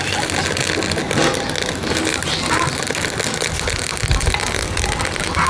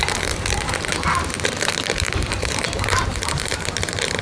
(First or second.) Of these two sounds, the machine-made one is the second